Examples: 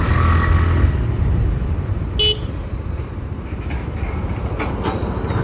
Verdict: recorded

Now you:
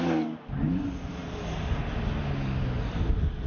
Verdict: recorded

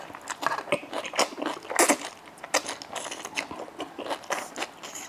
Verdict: recorded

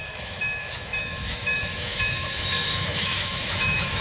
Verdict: remade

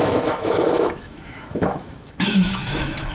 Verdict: remade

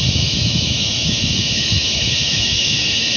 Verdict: remade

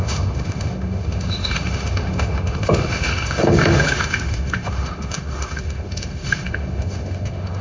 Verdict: remade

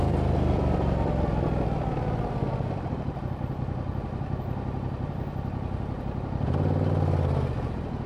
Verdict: recorded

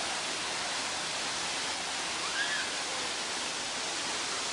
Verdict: recorded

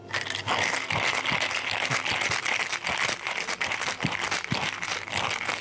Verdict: recorded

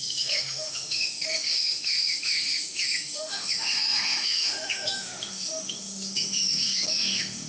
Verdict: remade